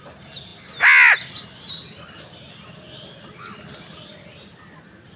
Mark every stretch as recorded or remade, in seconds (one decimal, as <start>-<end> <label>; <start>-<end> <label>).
0.0-5.2 recorded